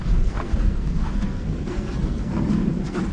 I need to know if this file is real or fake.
fake